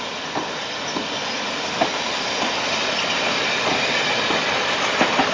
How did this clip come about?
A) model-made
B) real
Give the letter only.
B